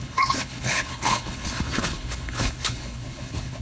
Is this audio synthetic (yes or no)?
yes